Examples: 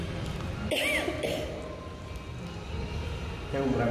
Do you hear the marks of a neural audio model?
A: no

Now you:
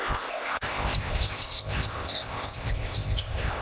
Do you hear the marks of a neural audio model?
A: yes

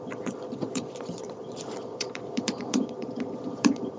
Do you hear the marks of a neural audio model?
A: yes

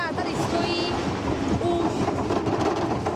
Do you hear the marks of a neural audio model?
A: no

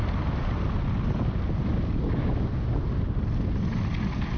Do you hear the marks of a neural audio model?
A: no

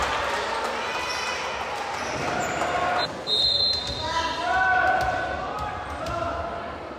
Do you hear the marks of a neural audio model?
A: no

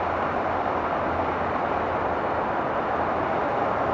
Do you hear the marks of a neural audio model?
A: yes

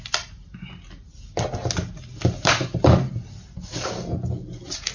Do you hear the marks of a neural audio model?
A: no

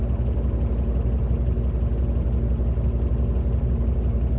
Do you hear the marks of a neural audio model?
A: no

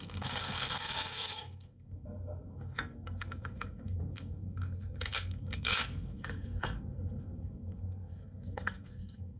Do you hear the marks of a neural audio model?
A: yes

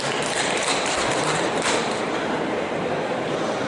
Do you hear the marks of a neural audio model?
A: no